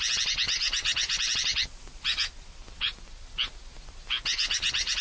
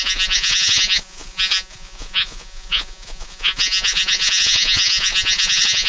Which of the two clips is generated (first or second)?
second